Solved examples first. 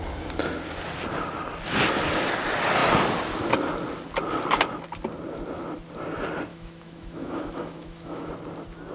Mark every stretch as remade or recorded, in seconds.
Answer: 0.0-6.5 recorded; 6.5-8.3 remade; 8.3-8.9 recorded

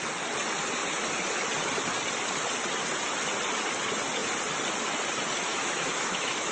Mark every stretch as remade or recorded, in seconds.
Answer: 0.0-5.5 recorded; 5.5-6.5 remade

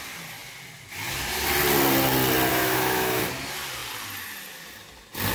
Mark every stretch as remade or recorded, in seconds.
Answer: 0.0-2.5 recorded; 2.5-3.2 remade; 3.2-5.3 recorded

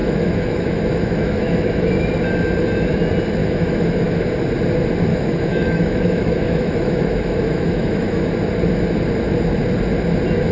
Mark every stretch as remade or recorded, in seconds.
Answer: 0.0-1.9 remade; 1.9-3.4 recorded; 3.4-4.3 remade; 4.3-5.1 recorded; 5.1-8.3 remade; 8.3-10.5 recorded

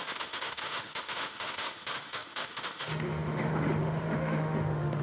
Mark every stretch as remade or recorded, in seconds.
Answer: 0.0-5.0 remade

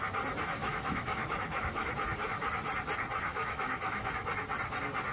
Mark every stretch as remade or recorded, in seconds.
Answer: 0.0-0.6 recorded; 0.6-1.9 remade; 1.9-3.3 recorded; 3.3-4.1 remade; 4.1-5.1 recorded